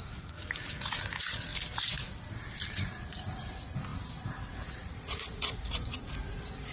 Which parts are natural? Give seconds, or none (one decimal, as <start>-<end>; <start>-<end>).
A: 1.5-2.7